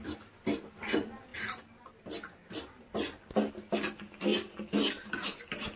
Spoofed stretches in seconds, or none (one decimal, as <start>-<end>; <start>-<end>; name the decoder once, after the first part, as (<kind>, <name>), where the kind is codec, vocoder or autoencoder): none